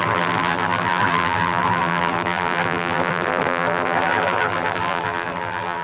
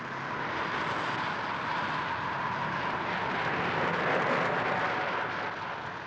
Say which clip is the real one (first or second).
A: second